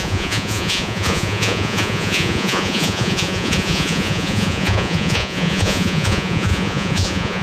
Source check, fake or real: fake